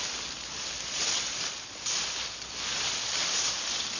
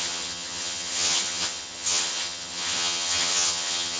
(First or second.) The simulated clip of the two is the second